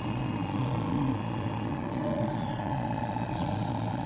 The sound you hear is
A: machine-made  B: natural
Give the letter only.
A